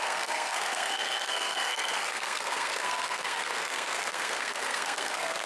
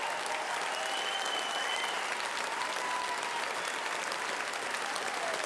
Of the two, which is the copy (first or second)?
first